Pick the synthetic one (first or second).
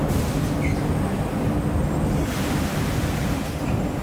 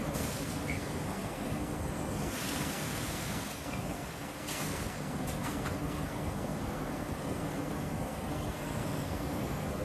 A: second